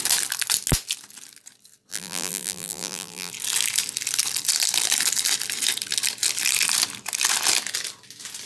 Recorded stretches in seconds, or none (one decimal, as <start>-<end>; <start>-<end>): 0.0-1.9; 3.3-8.5